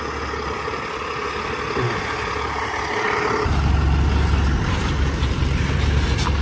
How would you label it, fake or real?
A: real